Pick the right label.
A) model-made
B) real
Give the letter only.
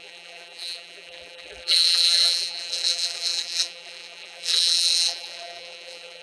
A